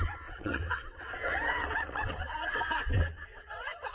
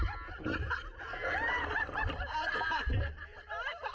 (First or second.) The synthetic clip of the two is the first